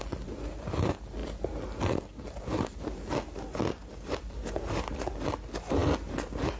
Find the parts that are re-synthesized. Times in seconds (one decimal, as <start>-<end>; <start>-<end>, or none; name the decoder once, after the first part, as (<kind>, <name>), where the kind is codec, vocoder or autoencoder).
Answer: none